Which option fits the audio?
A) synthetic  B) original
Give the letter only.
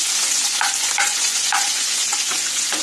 A